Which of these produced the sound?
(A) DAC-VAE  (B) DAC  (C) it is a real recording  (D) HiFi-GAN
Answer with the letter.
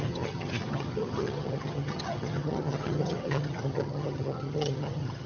D